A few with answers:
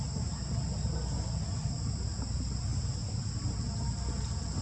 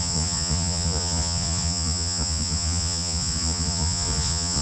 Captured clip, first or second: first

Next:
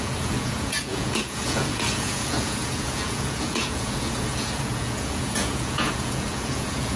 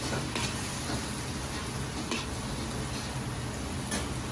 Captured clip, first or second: second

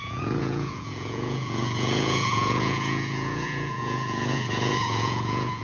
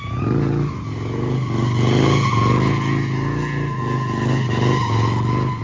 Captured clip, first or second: second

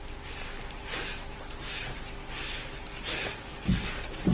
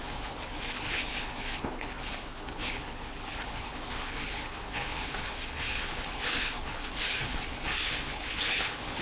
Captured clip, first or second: first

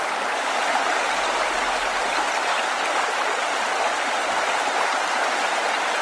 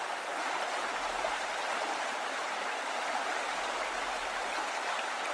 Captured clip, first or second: first